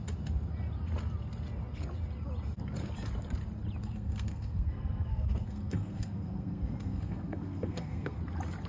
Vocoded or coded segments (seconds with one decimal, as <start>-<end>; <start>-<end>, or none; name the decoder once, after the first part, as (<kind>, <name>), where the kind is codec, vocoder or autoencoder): 3.8-8.2 (codec, SNAC)